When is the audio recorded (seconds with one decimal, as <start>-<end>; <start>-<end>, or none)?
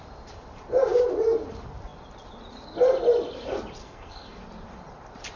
0.0-3.8; 4.4-5.4